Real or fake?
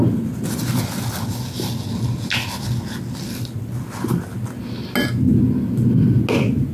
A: real